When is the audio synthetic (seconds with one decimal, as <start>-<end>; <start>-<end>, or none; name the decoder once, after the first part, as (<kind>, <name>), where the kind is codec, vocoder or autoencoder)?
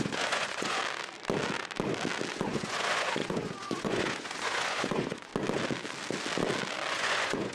0.0-0.8 (vocoder, Vocos); 2.3-5.3; 6.9-7.5